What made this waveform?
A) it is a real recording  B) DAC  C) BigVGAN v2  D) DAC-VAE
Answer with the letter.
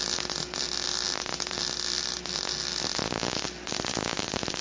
A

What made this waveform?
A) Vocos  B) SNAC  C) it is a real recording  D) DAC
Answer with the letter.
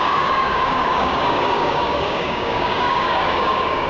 D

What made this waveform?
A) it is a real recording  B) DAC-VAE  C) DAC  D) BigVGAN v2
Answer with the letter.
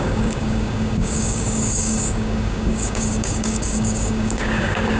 C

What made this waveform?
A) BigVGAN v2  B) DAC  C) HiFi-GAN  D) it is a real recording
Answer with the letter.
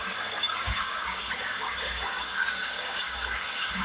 B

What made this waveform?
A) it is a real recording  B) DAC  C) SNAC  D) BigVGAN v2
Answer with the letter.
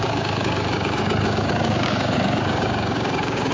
B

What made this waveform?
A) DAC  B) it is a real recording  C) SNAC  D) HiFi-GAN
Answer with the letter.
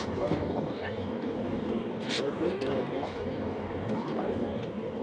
A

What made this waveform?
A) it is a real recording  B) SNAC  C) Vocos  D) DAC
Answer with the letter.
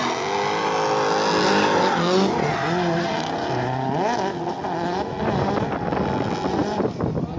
A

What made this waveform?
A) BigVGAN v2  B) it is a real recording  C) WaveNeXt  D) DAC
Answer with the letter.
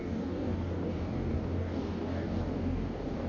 D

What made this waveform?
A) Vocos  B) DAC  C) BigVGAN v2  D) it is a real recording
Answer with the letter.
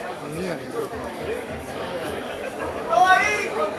B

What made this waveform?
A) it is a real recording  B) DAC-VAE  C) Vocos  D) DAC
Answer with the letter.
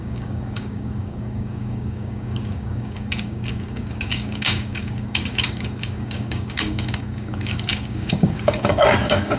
D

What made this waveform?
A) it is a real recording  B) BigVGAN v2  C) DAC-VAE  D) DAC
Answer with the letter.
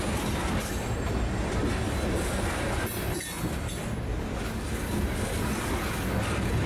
A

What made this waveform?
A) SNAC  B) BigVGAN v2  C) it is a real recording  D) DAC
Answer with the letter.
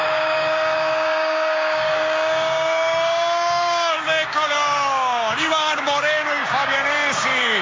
D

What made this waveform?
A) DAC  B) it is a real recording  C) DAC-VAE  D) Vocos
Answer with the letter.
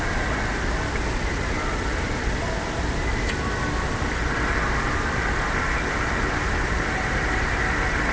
B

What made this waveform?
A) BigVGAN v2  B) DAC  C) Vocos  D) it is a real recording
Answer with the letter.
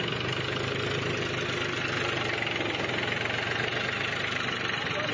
D